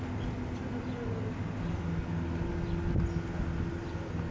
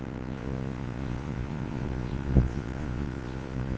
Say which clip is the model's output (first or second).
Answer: second